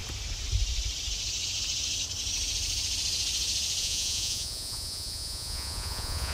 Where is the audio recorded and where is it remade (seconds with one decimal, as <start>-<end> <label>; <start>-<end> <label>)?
0.0-3.8 recorded; 3.8-6.3 remade